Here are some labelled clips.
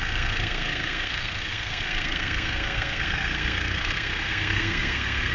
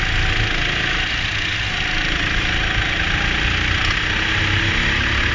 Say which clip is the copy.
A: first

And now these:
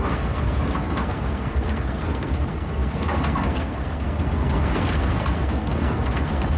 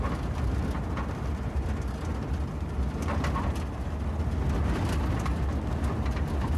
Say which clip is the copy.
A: first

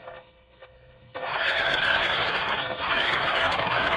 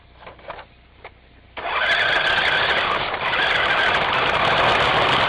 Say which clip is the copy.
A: first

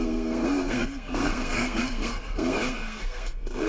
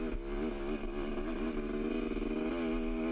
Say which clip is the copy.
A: first